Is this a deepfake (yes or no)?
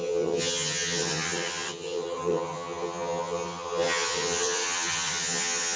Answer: yes